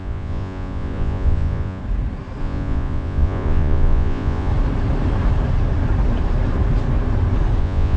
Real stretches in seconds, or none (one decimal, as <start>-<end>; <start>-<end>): 1.8-2.4; 4.5-7.6